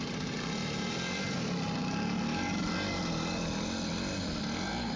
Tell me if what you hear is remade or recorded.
recorded